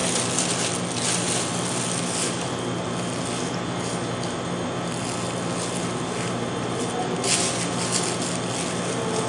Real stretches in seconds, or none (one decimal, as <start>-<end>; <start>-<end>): 0.0-9.3